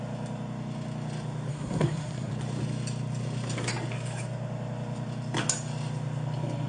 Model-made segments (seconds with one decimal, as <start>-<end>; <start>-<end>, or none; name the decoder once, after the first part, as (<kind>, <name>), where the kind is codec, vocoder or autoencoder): 1.5-2.3 (codec, SNAC)